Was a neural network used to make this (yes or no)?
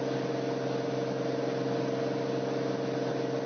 no